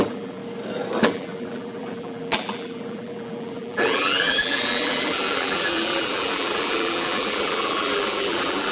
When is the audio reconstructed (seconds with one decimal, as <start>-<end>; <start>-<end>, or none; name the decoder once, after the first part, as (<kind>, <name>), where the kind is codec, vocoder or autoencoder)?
0.0-0.4 (vocoder, BigVGAN v2); 1.0-8.7